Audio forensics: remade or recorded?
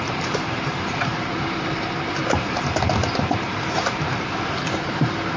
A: remade